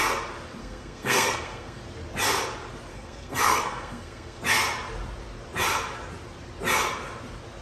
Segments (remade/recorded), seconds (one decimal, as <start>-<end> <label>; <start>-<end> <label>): 0.0-0.6 recorded; 0.6-1.8 remade; 1.8-2.9 recorded; 2.9-4.4 remade; 4.4-7.6 recorded